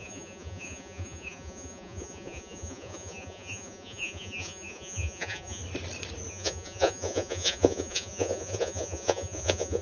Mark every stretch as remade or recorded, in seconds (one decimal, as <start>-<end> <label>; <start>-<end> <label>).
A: 0.0-5.6 remade; 5.6-6.3 recorded; 6.3-9.8 remade